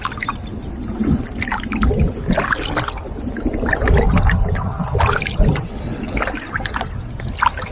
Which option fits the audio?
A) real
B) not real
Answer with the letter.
A